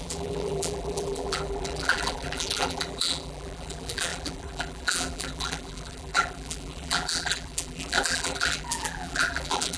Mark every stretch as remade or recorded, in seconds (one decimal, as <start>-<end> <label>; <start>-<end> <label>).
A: 0.0-9.8 remade